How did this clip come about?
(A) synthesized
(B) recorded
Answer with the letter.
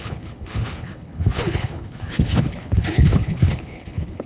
A